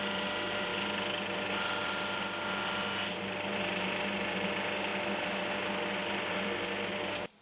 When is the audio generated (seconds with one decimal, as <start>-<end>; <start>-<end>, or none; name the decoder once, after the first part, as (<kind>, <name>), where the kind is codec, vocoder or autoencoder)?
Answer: 0.0-0.7 (vocoder, BigVGAN v2); 3.1-4.9